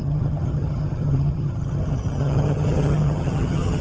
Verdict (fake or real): fake